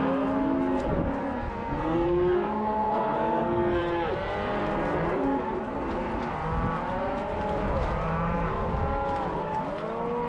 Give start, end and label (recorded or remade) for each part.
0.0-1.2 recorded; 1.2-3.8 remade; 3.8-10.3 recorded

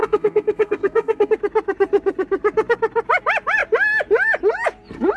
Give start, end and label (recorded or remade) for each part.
0.0-1.3 remade; 1.3-5.2 recorded

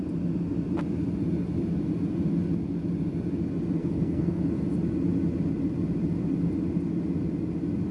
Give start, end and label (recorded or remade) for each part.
0.0-3.8 recorded; 3.8-4.4 remade; 4.4-7.9 recorded

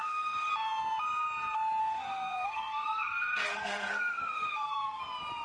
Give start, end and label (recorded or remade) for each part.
0.0-0.5 remade; 0.5-1.8 recorded; 1.8-5.0 remade; 5.0-5.4 recorded

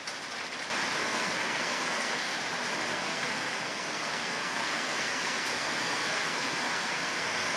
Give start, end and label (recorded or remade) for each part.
0.0-1.0 recorded; 1.0-2.4 remade; 2.4-2.9 recorded; 2.9-7.6 remade